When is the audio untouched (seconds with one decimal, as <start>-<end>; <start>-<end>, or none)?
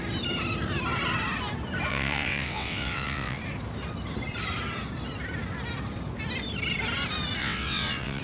0.0-1.9; 3.4-7.4